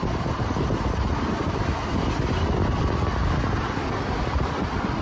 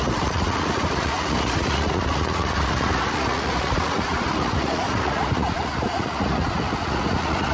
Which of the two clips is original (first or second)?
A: first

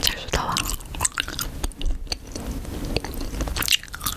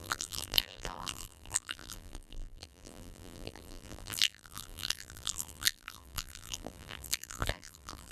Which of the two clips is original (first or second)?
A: first